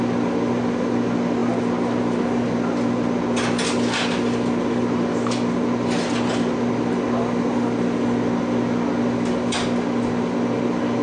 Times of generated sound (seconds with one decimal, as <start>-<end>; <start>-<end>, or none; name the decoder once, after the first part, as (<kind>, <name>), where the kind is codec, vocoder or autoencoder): none